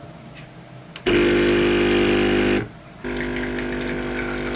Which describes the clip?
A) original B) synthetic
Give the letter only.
A